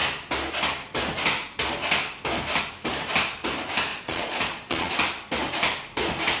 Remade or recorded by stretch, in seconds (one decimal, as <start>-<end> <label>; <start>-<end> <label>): 0.0-3.9 recorded; 3.9-4.9 remade; 4.9-6.4 recorded